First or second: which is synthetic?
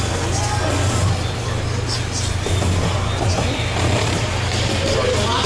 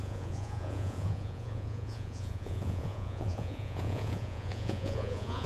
second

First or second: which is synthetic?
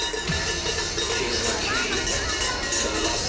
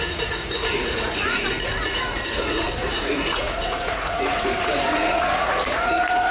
second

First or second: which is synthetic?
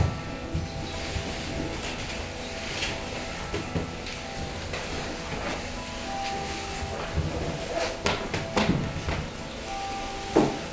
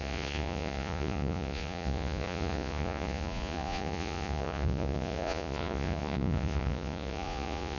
second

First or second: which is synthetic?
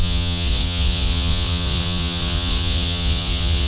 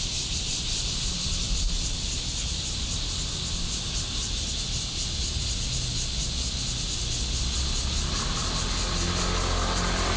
first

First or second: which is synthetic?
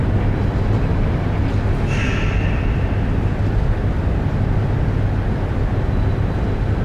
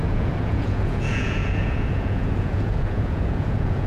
second